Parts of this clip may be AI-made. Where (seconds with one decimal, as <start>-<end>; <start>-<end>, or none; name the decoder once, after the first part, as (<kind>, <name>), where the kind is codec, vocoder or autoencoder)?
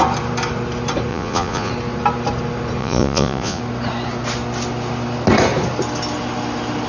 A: 1.1-1.7 (vocoder, Vocos); 2.8-3.6